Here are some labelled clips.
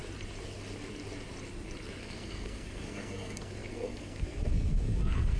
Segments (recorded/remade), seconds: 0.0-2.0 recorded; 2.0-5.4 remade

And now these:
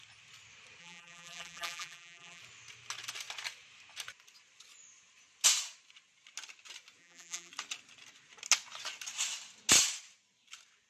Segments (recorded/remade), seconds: 0.0-0.8 recorded; 0.8-2.4 remade; 2.4-7.0 recorded; 7.0-7.5 remade; 7.5-10.9 recorded

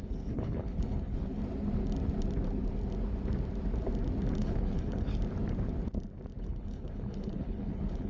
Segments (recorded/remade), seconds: 0.0-1.4 remade; 1.4-4.4 recorded; 4.4-5.1 remade; 5.1-6.4 recorded; 6.4-8.1 remade

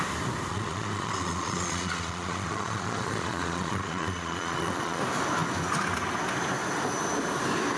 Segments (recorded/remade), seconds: 0.0-0.5 recorded; 0.5-5.0 remade; 5.0-7.8 recorded

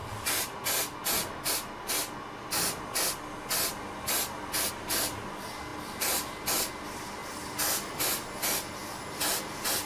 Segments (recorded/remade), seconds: 0.0-9.9 recorded

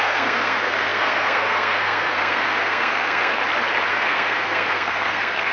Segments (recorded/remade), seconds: 0.0-3.4 remade; 3.4-3.9 recorded; 3.9-5.5 remade

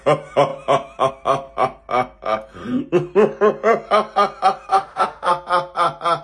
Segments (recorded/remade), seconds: 0.0-4.7 recorded; 4.7-5.3 remade; 5.3-6.2 recorded